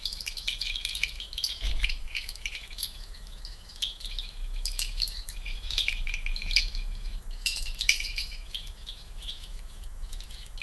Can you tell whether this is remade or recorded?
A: remade